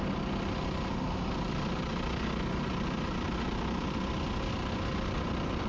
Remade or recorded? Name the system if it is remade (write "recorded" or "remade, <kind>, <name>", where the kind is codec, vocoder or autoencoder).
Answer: recorded